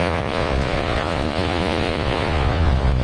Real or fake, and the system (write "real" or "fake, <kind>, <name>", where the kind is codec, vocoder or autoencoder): fake, vocoder, Vocos